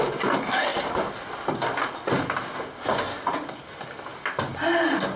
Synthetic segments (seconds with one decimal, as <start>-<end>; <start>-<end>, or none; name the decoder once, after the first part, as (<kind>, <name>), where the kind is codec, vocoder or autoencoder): none